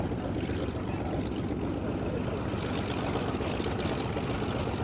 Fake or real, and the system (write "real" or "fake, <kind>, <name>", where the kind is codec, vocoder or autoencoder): real